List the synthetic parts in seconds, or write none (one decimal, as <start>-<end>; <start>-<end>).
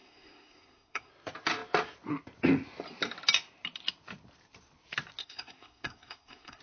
0.0-1.1; 5.2-6.6